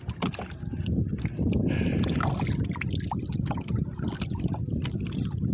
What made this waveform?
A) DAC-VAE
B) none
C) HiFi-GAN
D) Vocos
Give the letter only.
B